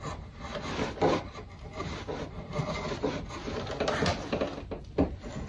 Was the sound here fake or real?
real